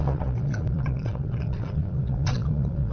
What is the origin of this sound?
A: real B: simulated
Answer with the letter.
B